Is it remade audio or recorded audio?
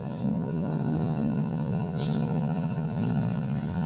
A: remade